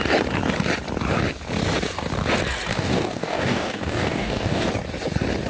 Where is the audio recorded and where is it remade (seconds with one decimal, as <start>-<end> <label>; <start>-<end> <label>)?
0.0-2.7 recorded; 2.7-4.7 remade; 4.7-5.5 recorded